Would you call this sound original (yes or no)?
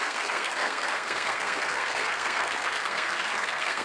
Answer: no